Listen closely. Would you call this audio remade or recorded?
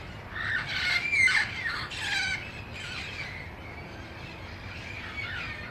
recorded